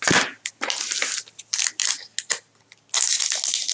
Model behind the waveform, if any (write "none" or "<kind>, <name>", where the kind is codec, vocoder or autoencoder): none